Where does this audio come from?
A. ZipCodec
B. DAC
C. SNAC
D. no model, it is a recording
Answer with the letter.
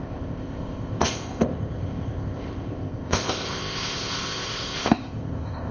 A